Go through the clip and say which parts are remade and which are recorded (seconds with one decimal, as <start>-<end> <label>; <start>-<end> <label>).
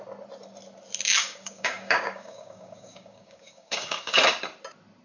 0.0-1.2 recorded; 1.2-4.2 remade; 4.2-5.0 recorded